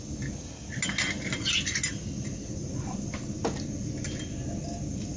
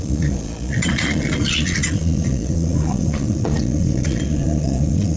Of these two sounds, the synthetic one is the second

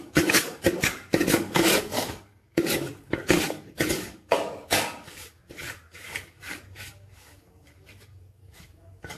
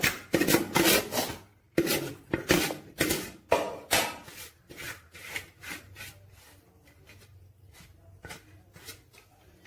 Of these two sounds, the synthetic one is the first